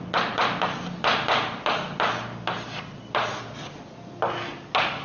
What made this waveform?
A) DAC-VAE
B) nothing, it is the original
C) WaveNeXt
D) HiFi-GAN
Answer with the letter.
B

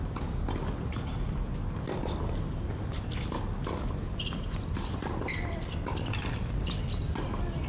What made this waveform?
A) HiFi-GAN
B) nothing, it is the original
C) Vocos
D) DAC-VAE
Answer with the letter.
B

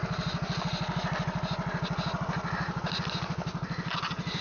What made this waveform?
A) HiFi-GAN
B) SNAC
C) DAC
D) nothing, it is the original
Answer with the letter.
D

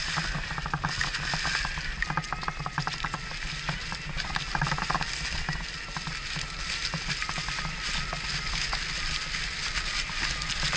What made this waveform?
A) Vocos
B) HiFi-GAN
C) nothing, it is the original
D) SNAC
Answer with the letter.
C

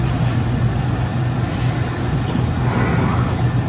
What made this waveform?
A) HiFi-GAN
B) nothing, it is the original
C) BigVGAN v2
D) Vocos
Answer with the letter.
B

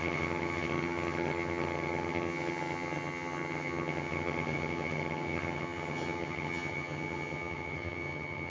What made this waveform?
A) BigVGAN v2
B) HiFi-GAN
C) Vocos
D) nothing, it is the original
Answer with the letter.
B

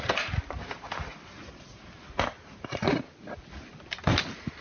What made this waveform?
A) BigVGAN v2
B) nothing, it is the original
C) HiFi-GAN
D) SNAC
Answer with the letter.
B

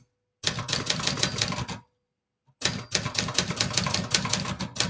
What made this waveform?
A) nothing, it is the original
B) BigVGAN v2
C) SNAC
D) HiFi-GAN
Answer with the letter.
A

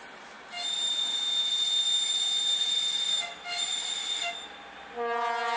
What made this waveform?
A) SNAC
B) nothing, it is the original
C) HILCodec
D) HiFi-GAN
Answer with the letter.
B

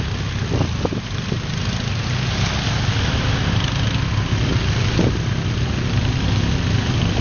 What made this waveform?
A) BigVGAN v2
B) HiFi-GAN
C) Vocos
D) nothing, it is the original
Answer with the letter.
D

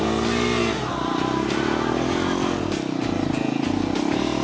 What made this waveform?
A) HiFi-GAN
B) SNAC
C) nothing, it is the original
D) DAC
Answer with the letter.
C